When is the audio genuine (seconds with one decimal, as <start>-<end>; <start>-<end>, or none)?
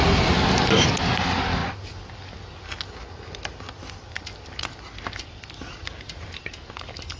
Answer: 0.0-7.2